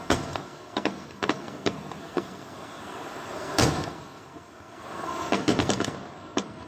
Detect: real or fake fake